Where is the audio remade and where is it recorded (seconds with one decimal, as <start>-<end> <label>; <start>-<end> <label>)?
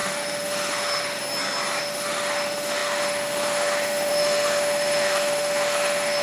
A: 0.0-1.2 remade; 1.2-1.8 recorded; 1.8-6.2 remade